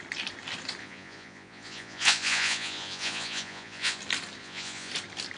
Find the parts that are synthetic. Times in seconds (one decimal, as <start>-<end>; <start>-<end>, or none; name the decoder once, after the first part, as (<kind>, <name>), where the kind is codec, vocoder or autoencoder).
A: 0.8-4.0 (vocoder, Vocos); 4.4-4.9